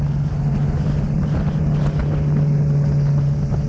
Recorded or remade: recorded